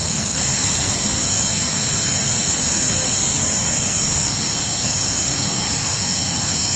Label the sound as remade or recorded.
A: remade